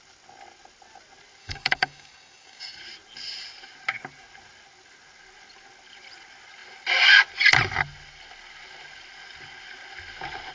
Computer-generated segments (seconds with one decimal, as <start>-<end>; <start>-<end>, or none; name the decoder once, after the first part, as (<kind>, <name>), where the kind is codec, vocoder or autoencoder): 1.4-2.8 (codec, DAC)